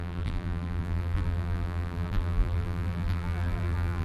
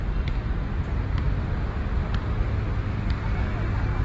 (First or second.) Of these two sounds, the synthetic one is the first